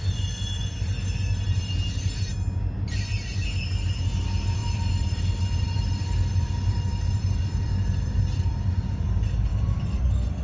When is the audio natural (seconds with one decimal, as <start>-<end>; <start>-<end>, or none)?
0.0-4.6; 8.6-9.5; 10.0-10.4